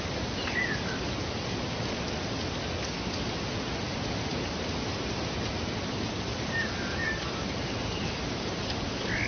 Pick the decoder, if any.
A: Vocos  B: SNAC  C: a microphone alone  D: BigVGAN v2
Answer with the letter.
C